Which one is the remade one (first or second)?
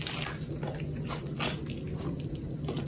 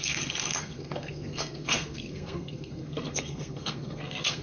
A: second